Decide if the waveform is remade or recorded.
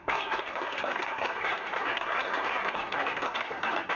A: remade